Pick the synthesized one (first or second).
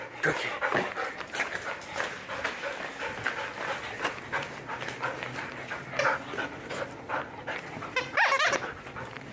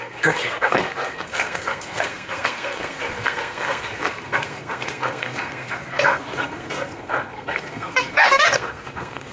second